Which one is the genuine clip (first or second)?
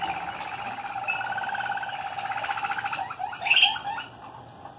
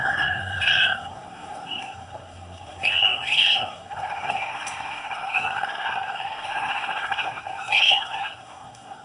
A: first